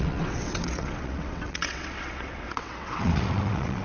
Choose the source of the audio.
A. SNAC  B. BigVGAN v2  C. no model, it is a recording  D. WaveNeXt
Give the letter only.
D